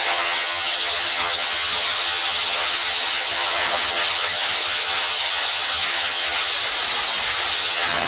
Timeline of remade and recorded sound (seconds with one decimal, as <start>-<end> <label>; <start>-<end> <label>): 0.0-6.5 remade; 6.5-7.5 recorded; 7.5-8.1 remade